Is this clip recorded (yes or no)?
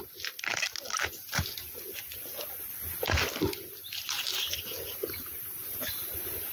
yes